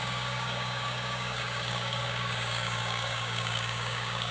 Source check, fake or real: fake